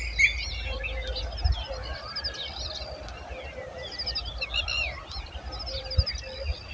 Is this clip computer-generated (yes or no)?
no